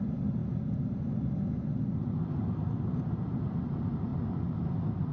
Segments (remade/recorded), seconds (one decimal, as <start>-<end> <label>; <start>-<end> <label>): 0.0-5.1 recorded